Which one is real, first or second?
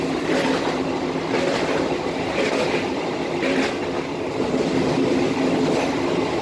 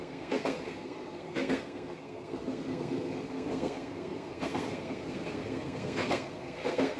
first